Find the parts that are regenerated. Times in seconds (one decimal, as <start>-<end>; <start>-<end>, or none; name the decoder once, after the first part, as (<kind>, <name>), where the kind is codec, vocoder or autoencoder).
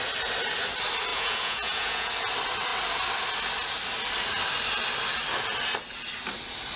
1.1-2.1 (vocoder, Vocos)